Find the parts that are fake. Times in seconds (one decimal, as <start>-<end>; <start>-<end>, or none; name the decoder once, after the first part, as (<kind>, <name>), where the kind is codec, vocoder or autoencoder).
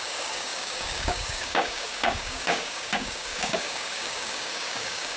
0.0-5.2 (codec, DAC)